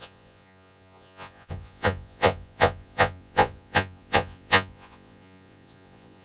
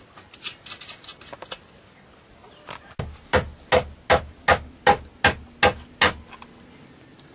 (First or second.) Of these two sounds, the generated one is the first